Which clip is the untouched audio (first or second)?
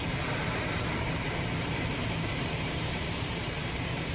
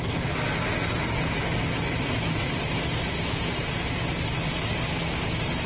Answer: second